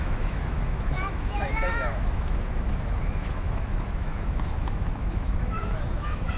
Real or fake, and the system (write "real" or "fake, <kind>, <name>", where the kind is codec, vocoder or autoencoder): fake, autoencoder, DAC-VAE